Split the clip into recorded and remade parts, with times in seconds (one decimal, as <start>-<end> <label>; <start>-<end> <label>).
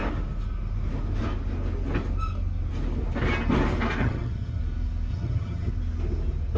0.0-4.0 recorded; 4.0-4.6 remade; 4.6-5.1 recorded; 5.1-5.7 remade; 5.7-6.6 recorded